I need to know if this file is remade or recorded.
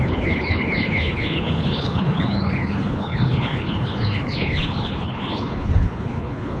remade